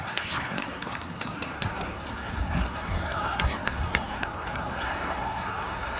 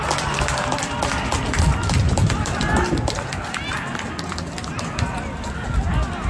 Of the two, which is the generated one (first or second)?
first